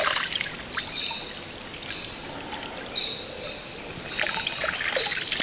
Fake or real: real